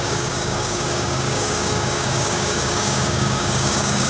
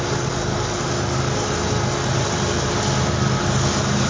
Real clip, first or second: second